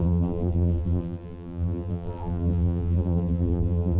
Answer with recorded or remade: remade